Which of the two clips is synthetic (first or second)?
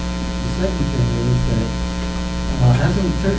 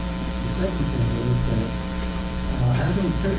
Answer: second